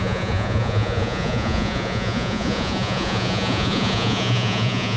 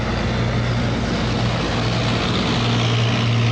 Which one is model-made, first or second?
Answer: first